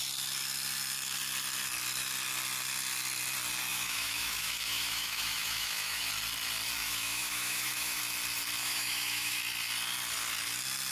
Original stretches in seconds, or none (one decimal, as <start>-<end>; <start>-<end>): 0.0-3.7; 6.1-6.8; 8.0-8.6; 9.4-10.9

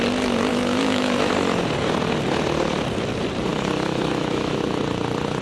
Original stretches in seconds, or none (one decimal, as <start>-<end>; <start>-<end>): 0.0-0.5; 1.3-3.5; 4.6-5.4

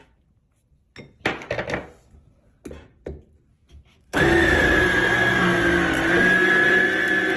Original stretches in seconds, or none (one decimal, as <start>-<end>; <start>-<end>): 0.0-3.5; 4.6-7.4

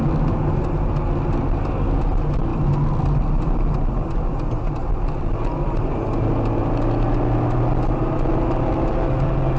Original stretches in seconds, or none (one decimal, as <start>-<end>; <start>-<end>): 0.0-9.6

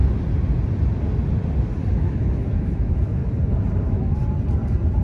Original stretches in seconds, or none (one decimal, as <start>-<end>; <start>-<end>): 0.0-1.9; 3.2-3.8; 4.2-5.0

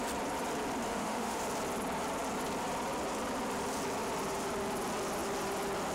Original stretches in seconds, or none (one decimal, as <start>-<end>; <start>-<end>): 0.0-0.9; 1.4-5.9